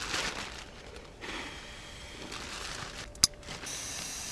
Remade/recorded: recorded